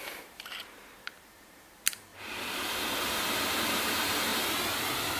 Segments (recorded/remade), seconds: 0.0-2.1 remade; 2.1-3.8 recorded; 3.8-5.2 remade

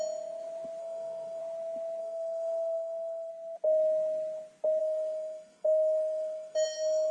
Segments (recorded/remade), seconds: 0.0-0.8 recorded; 0.8-1.4 remade; 1.4-2.0 recorded; 2.0-3.3 remade; 3.3-4.8 recorded; 4.8-7.1 remade

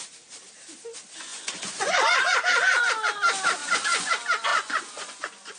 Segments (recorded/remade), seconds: 0.0-1.3 recorded; 1.3-2.8 remade; 2.8-3.6 recorded; 3.6-4.1 remade; 4.1-4.5 recorded; 4.5-5.6 remade

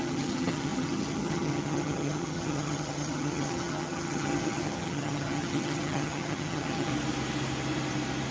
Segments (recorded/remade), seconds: 0.0-6.9 remade; 6.9-8.3 recorded

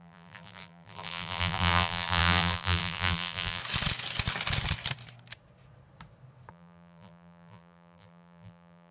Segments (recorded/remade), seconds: 0.0-3.6 remade; 3.6-6.5 recorded; 6.5-8.9 remade